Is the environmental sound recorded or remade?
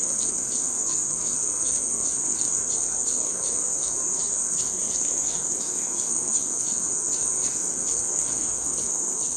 remade